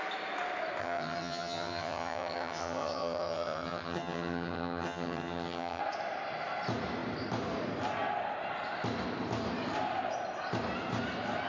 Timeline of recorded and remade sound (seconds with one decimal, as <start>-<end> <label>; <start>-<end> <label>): 0.0-0.8 recorded; 0.8-5.8 remade; 5.8-11.5 recorded